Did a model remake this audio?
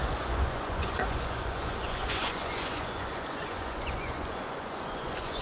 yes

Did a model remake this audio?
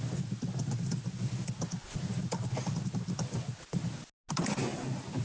no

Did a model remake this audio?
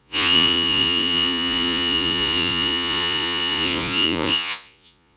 yes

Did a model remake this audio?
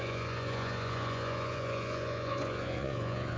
yes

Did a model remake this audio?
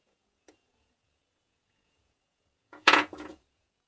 yes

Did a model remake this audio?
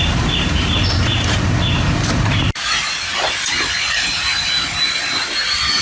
no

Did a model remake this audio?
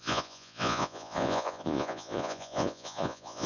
yes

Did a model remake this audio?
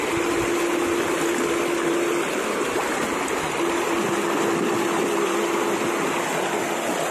no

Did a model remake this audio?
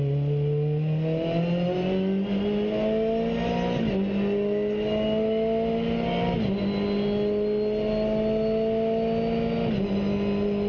no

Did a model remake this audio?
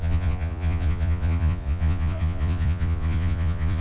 yes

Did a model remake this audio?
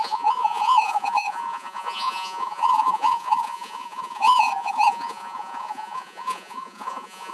yes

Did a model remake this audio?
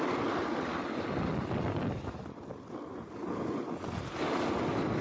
no